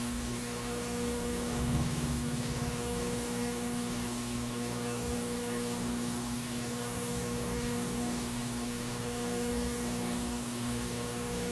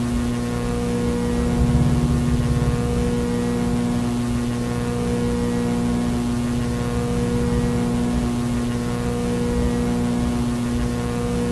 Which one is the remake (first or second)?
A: first